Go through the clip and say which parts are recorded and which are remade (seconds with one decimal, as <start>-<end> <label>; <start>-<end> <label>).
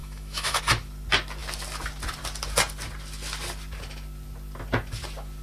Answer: 0.0-0.6 remade; 0.6-5.4 recorded